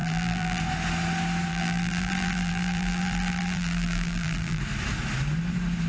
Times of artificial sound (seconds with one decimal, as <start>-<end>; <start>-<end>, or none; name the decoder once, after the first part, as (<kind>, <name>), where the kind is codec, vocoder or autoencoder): 0.0-0.6 (vocoder, BigVGAN v2); 1.5-4.6